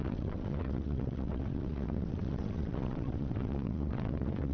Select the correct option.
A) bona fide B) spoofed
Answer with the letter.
B